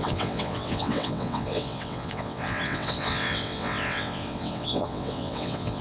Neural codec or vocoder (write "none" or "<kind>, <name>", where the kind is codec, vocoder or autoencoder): vocoder, WaveNeXt